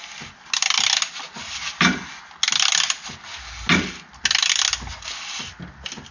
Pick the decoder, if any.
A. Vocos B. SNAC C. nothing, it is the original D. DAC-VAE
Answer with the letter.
C